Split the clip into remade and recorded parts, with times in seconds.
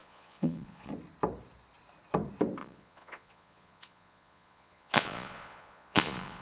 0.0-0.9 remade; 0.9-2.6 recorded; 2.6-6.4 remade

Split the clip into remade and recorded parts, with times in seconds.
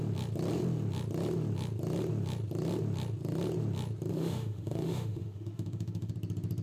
0.0-4.1 recorded; 4.1-6.1 remade; 6.1-6.6 recorded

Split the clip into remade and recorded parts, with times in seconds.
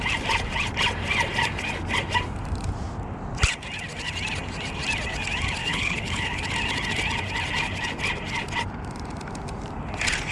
0.0-5.6 recorded; 5.6-6.4 remade; 6.4-10.3 recorded